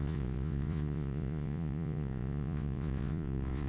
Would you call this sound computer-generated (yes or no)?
yes